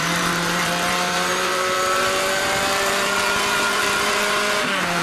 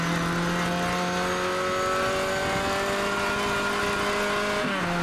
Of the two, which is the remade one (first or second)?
first